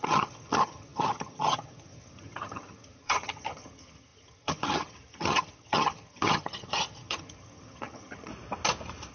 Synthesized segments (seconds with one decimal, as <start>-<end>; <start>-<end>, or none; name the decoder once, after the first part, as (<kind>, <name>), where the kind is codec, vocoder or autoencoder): 0.0-8.3 (vocoder, HiFi-GAN)